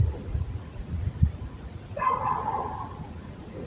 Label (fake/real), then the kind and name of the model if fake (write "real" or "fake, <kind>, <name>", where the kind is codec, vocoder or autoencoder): fake, vocoder, Vocos